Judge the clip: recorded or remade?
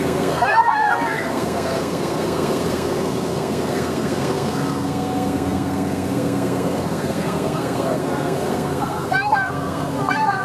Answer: remade